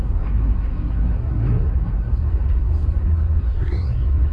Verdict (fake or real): fake